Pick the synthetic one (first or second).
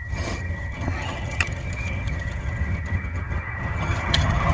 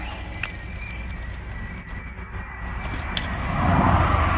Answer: first